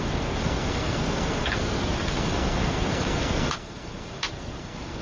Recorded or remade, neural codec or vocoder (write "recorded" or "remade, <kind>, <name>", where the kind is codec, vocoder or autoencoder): remade, codec, SNAC